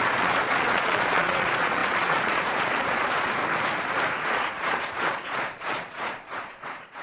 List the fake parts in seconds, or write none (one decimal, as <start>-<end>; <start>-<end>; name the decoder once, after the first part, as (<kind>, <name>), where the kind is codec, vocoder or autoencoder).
0.0-3.4 (vocoder, Vocos); 4.2-7.0